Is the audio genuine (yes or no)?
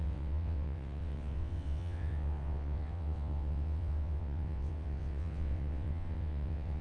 no